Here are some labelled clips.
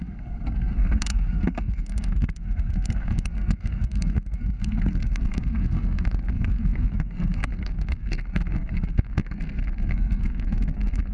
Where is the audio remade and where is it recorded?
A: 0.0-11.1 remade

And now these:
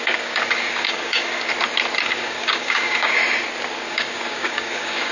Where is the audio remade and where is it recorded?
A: 0.0-1.5 remade; 1.5-2.0 recorded; 2.0-3.2 remade; 3.2-3.9 recorded; 3.9-5.1 remade

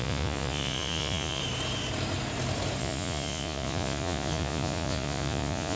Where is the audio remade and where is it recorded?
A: 0.0-1.4 remade; 1.4-2.8 recorded; 2.8-5.8 remade

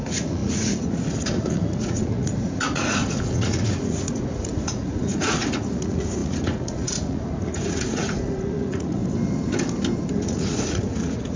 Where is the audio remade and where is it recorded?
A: 0.0-9.0 remade; 9.0-10.1 recorded; 10.1-11.4 remade

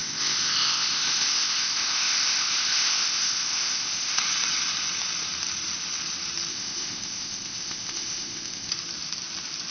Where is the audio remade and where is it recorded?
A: 0.0-4.2 remade; 4.2-6.5 recorded; 6.5-8.7 remade; 8.7-9.7 recorded

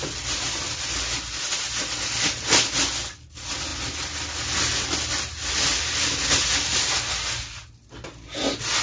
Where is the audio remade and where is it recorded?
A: 0.0-8.8 recorded

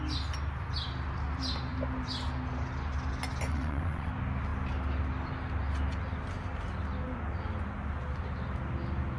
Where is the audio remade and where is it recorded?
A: 0.0-3.5 recorded; 3.5-4.1 remade; 4.1-9.2 recorded

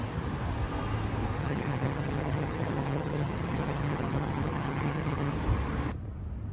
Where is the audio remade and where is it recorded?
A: 0.0-1.4 recorded; 1.4-5.3 remade; 5.3-6.5 recorded